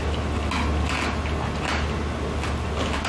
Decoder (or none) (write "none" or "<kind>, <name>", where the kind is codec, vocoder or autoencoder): none